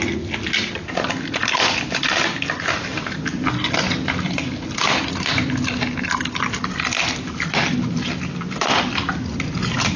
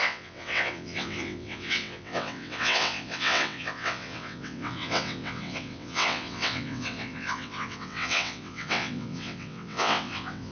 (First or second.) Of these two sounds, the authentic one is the first